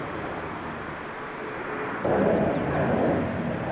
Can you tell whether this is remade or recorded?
recorded